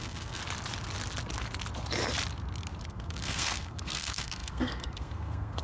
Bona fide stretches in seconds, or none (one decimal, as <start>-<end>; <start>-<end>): 0.4-2.9